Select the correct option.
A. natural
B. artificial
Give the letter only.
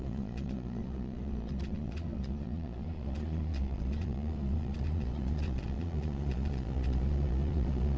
B